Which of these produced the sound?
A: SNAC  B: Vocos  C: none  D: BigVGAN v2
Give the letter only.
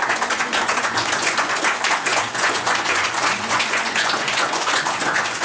B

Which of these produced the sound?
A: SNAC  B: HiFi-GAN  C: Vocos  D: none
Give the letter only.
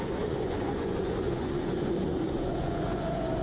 C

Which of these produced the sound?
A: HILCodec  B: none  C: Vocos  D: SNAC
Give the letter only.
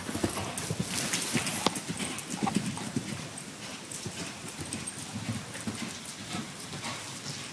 B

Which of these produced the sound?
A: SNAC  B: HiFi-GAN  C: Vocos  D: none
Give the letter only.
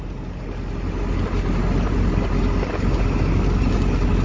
D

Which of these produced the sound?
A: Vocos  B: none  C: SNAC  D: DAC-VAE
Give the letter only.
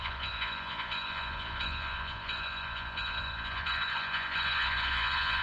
A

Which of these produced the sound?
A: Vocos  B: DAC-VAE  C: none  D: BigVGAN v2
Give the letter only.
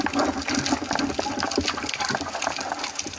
C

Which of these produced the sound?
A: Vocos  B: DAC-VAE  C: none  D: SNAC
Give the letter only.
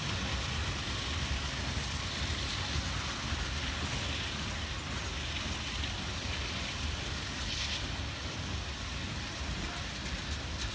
C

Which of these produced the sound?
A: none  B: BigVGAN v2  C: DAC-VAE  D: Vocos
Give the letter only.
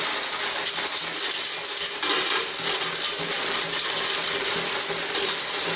A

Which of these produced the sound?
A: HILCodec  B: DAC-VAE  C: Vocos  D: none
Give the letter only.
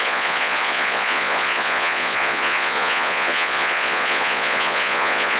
C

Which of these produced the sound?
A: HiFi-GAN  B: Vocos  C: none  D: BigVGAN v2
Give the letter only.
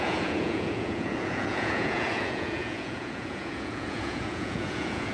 B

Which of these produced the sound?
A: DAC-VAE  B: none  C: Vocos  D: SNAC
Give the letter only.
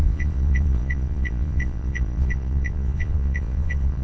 C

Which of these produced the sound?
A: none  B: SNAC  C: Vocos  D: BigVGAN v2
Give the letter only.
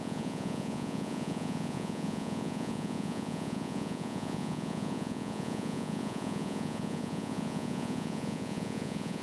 C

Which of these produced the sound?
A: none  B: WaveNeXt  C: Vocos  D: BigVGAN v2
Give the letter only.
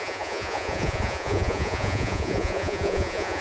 C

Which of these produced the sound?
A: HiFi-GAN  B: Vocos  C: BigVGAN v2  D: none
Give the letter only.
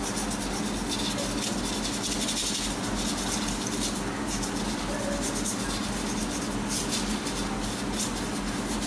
D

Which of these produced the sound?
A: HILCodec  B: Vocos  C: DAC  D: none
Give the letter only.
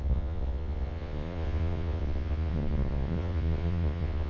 B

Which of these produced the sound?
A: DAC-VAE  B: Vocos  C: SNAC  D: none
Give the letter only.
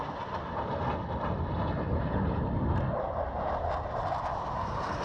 D